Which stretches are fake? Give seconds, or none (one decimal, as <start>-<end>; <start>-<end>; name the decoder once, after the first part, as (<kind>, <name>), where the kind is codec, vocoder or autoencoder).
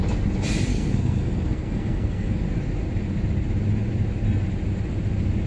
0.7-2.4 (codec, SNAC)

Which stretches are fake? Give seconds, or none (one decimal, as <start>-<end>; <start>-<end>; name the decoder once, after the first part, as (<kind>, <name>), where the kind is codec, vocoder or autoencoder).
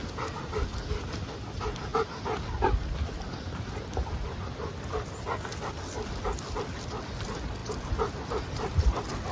none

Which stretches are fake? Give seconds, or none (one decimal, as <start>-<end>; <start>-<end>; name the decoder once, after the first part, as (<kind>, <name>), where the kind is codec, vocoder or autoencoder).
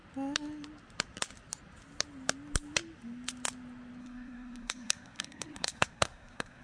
4.0-6.6 (codec, SNAC)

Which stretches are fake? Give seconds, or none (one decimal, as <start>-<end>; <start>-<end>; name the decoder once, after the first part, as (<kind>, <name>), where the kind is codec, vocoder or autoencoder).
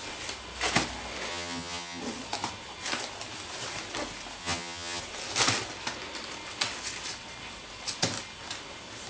1.3-2.0 (vocoder, HiFi-GAN); 4.4-5.0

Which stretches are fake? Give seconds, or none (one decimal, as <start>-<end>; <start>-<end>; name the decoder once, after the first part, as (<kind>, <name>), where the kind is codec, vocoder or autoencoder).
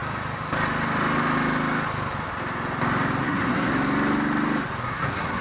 3.2-3.7 (codec, SNAC); 4.8-5.4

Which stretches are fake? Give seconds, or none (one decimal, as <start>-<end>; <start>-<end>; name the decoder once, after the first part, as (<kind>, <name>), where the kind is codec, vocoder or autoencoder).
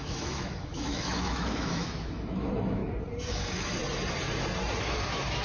0.0-2.8 (autoencoder, DAC-VAE); 3.3-3.8; 4.8-5.4